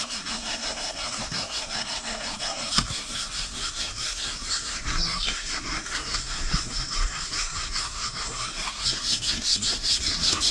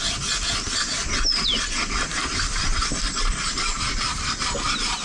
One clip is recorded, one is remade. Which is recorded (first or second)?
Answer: second